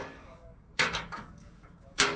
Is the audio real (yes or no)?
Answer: no